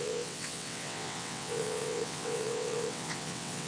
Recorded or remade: remade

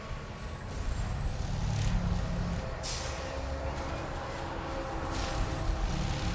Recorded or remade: recorded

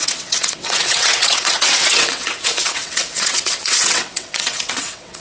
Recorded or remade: remade